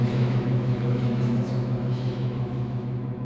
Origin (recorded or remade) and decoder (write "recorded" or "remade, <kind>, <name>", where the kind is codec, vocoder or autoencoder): remade, autoencoder, DAC-VAE